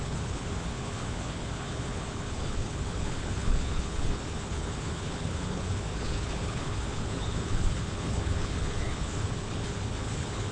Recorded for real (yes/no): no